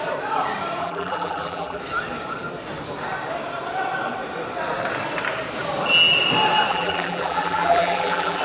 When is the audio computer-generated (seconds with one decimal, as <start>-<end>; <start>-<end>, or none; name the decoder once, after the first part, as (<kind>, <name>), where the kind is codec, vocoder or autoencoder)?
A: 0.8-1.8 (vocoder, BigVGAN v2); 6.7-8.4